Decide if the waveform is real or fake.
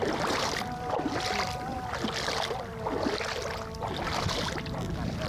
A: real